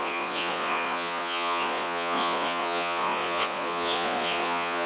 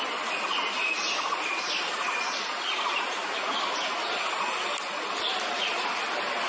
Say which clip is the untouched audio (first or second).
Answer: second